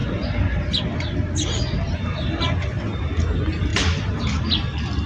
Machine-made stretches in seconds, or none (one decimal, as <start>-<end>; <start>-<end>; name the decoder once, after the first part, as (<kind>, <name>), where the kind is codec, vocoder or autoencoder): 0.0-3.0 (vocoder, BigVGAN v2)